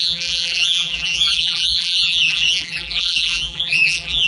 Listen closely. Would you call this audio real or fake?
fake